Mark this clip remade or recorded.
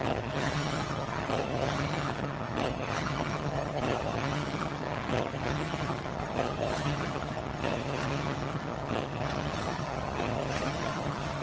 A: remade